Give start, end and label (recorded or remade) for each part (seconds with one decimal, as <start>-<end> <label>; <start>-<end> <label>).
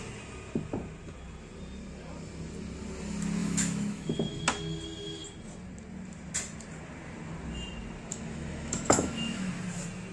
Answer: 0.0-3.4 recorded; 3.4-4.4 remade; 4.4-8.1 recorded; 8.1-9.5 remade; 9.5-10.1 recorded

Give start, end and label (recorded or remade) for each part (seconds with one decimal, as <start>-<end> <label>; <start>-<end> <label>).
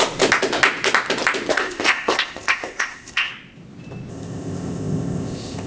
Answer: 0.0-1.5 recorded; 1.5-3.3 remade; 3.3-4.1 recorded; 4.1-5.7 remade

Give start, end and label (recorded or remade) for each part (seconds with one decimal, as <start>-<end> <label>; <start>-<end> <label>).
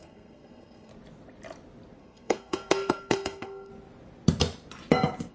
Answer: 0.0-0.9 remade; 0.9-2.0 recorded; 2.0-3.7 remade; 3.7-5.3 recorded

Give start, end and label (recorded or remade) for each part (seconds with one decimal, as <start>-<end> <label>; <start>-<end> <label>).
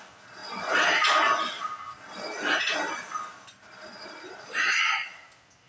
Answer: 0.0-5.7 recorded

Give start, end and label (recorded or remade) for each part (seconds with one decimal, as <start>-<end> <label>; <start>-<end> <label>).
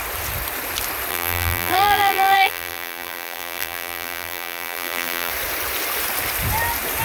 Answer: 0.0-1.1 recorded; 1.1-5.3 remade; 5.3-7.0 recorded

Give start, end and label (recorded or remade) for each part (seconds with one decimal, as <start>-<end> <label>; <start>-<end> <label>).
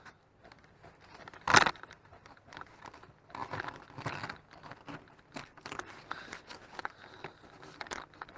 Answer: 0.0-1.5 recorded; 1.5-2.8 remade; 2.8-8.4 recorded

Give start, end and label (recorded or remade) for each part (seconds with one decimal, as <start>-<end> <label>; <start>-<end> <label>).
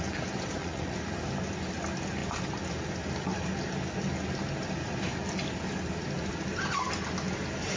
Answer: 0.0-0.5 recorded; 0.5-1.1 remade; 1.1-7.8 recorded